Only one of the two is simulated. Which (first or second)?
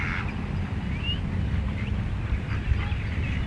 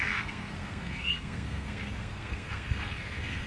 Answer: second